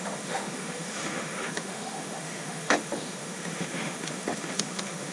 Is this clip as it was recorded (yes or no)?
no